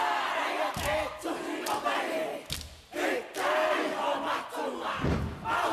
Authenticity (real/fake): real